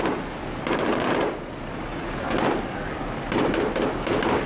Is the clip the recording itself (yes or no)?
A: yes